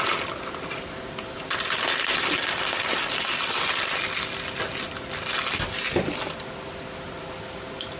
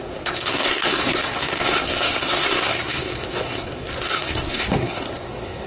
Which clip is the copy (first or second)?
second